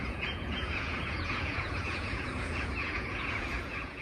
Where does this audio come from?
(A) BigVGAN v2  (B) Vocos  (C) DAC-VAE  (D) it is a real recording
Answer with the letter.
B